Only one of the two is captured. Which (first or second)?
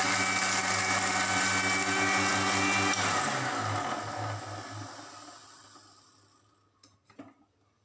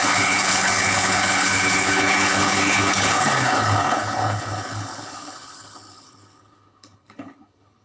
first